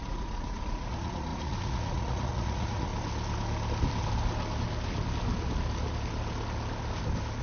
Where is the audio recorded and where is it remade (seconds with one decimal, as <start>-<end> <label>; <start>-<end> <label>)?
0.0-2.9 remade; 2.9-7.4 recorded